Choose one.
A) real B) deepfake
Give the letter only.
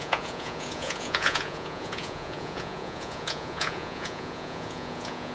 B